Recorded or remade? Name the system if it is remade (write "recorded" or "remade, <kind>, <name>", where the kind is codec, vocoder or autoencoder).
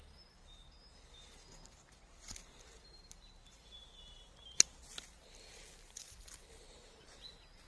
recorded